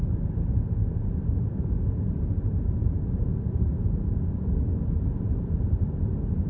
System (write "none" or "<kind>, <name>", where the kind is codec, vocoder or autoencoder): none